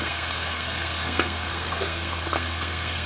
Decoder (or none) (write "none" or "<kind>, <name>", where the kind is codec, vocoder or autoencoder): codec, SNAC